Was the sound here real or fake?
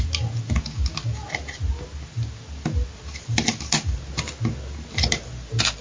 real